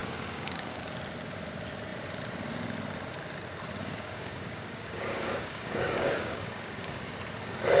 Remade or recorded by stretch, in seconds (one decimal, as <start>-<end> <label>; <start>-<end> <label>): 0.0-0.8 remade; 0.8-3.8 recorded; 3.8-7.0 remade; 7.0-7.8 recorded